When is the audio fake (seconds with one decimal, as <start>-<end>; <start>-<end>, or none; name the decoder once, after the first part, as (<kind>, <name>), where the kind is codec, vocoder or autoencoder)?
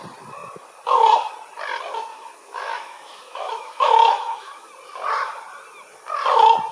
2.1-4.7 (autoencoder, DAC-VAE)